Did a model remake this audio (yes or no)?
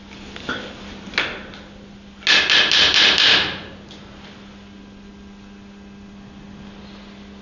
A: no